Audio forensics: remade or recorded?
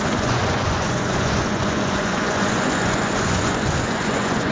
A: remade